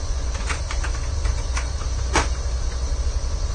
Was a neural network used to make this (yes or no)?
yes